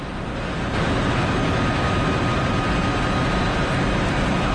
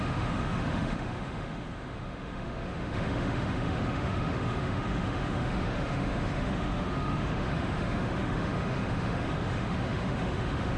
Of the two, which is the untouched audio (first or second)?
first